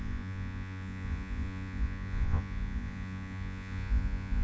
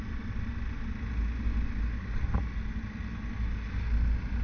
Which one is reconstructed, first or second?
first